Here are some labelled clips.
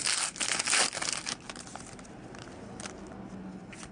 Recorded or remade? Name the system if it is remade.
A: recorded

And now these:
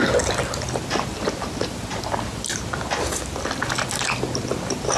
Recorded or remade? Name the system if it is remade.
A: recorded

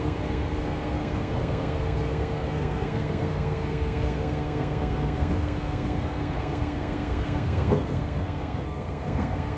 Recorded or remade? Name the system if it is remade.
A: remade, codec, SNAC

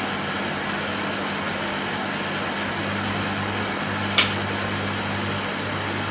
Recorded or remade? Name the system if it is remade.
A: recorded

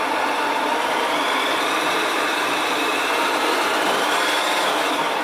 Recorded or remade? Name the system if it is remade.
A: remade, vocoder, BigVGAN v2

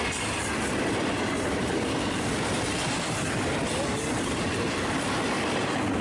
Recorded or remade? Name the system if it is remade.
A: remade, vocoder, BigVGAN v2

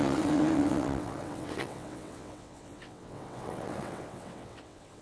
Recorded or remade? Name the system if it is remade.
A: remade, vocoder, WaveNeXt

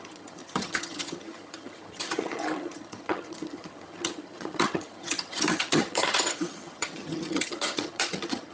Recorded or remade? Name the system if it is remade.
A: remade, vocoder, HiFi-GAN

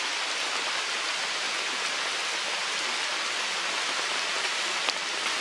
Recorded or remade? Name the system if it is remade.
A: recorded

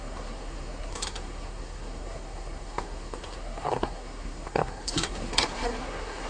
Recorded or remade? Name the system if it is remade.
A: remade, codec, SNAC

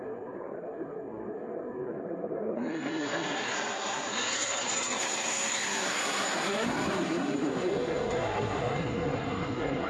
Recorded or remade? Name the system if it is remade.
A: remade, codec, SNAC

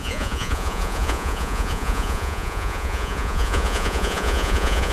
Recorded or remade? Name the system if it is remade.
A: remade, vocoder, Vocos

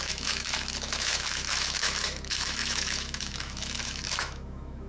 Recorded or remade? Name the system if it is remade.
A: remade, autoencoder, DAC-VAE